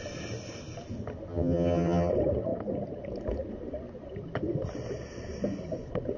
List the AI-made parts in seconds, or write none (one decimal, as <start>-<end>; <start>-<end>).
1.3-2.1